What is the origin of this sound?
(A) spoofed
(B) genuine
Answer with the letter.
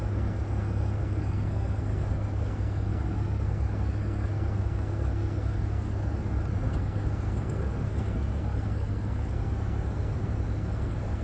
A